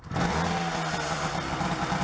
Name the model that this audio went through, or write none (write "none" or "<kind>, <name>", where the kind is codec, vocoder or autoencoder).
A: none